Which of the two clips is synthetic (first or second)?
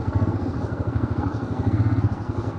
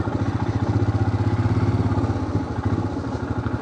first